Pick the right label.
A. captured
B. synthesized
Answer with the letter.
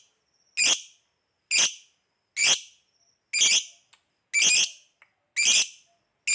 A